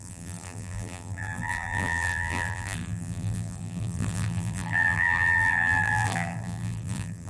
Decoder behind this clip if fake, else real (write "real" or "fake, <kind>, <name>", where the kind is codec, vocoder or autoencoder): fake, vocoder, BigVGAN v2